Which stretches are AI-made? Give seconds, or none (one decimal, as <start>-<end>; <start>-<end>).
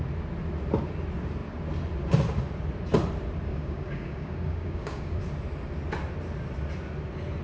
3.5-5.2